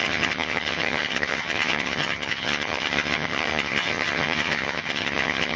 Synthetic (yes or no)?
yes